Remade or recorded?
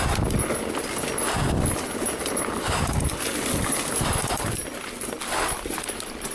recorded